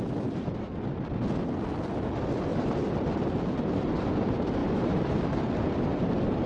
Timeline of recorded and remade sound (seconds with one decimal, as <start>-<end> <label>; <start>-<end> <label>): 0.0-2.5 recorded; 2.5-3.7 remade; 3.7-4.6 recorded; 4.6-5.1 remade; 5.1-5.9 recorded; 5.9-6.5 remade